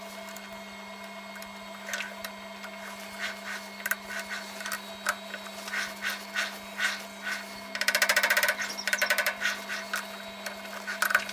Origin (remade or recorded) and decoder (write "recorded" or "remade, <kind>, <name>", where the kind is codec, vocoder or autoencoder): recorded